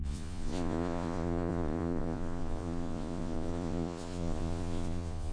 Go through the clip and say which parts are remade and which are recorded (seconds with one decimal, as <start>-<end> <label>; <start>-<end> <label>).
0.0-5.3 remade